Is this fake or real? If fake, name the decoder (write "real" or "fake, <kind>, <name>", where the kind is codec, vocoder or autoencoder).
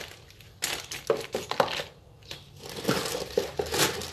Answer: real